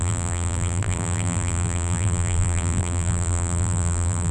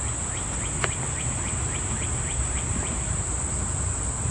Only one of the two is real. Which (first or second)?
second